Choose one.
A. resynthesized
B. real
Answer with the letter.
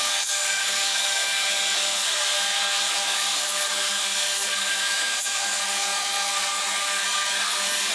A